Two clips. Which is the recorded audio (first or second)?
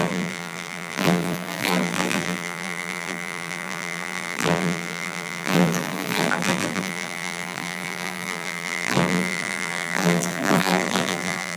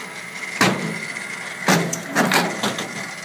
second